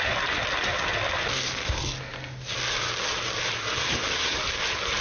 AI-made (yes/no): no